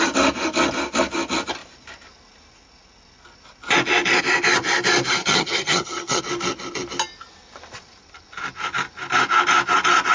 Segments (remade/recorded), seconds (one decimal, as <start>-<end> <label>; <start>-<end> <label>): 0.0-5.2 recorded; 5.2-6.2 remade; 6.2-10.1 recorded